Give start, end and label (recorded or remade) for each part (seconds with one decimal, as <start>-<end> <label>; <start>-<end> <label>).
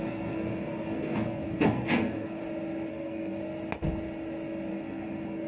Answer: 0.0-2.4 remade; 2.4-2.9 recorded; 2.9-3.4 remade; 3.4-4.7 recorded; 4.7-5.5 remade